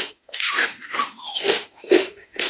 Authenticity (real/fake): fake